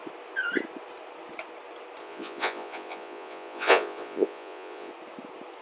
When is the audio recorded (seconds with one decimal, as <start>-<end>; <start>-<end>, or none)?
0.0-2.0; 4.9-5.6

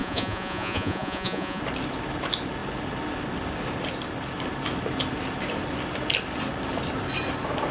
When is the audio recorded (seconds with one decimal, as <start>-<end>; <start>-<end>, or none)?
1.6-7.7

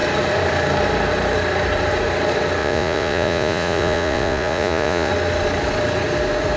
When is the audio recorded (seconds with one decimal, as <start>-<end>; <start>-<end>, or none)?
0.0-2.6; 5.1-6.6

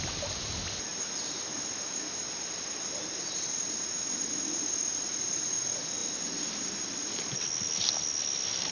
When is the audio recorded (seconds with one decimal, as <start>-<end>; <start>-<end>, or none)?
0.0-8.7

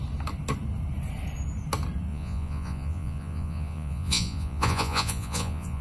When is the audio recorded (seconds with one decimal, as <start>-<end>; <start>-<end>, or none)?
0.0-2.1

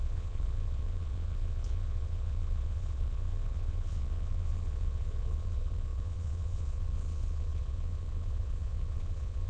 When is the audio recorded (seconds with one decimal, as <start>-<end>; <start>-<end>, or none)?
none

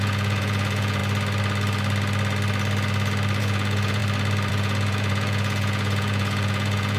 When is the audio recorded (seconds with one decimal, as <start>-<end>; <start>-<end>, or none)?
1.0-3.4; 4.0-4.5

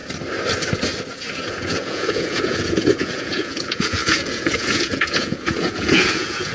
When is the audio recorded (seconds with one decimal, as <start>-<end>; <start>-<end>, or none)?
0.0-1.5